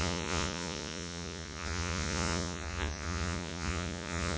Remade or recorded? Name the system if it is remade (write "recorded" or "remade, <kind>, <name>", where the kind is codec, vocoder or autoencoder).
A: remade, vocoder, Vocos